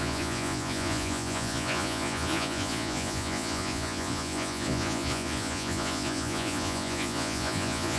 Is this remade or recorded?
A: remade